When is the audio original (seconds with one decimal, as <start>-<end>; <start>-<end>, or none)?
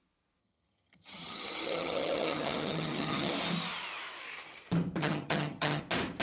0.0-0.4; 3.3-5.0; 5.8-6.2